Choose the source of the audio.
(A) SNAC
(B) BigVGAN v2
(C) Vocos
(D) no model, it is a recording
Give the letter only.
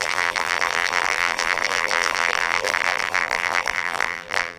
B